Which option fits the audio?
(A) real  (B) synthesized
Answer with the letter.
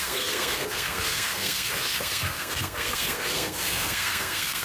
B